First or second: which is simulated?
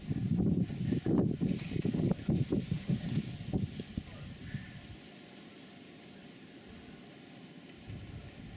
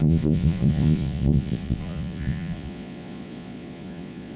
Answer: second